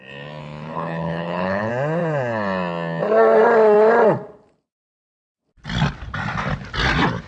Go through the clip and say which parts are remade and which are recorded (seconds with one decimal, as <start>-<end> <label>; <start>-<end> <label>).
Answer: 0.0-0.4 recorded; 0.4-1.7 remade; 1.7-7.3 recorded